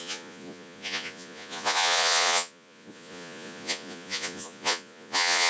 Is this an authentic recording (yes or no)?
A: no